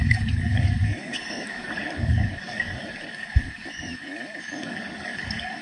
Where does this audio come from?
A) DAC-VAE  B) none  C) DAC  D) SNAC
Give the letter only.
C